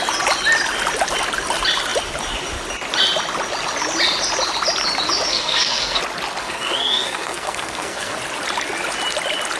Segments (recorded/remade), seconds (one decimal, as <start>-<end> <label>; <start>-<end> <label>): 0.0-5.3 recorded; 5.3-6.0 remade; 6.0-6.4 recorded; 6.4-8.2 remade; 8.2-9.6 recorded